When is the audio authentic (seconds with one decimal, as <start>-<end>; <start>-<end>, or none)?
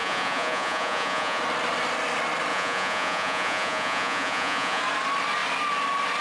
1.4-2.5; 4.8-6.2